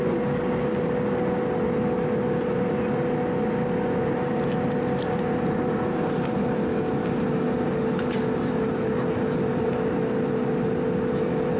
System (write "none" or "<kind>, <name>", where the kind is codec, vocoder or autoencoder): none